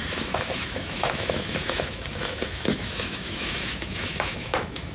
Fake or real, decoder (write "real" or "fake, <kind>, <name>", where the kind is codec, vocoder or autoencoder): fake, autoencoder, DAC-VAE